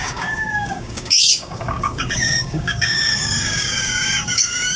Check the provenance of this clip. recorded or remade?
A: remade